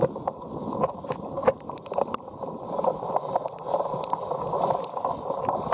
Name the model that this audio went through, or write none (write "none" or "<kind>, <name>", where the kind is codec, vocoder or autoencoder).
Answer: none